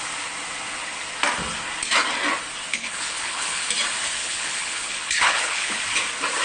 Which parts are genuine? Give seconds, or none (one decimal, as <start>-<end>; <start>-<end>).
0.0-2.7; 3.6-4.2; 5.8-6.4